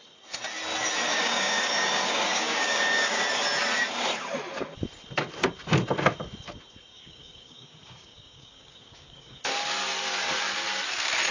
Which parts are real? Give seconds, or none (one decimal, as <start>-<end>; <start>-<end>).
0.0-1.1; 3.2-6.9; 9.5-11.3